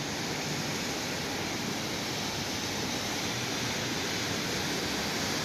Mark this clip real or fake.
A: real